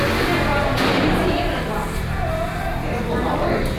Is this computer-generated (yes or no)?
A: no